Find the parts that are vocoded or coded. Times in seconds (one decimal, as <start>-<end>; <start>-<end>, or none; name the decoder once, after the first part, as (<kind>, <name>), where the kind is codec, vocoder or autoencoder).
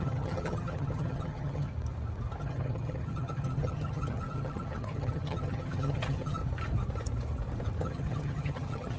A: 0.0-1.7 (vocoder, HiFi-GAN); 2.4-6.4; 7.8-9.0